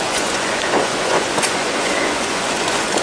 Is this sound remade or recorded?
remade